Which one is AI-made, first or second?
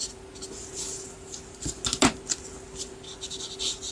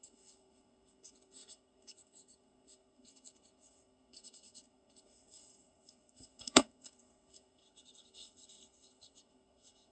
second